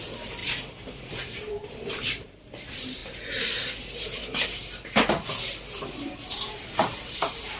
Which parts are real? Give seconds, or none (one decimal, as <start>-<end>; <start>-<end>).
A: 3.0-3.8; 4.2-6.1